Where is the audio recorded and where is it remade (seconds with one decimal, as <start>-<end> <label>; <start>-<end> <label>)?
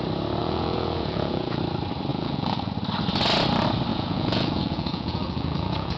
0.0-0.4 recorded; 0.4-1.6 remade; 1.6-2.1 recorded; 2.1-2.7 remade; 2.7-3.9 recorded; 3.9-6.0 remade